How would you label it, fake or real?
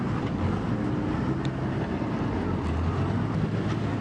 real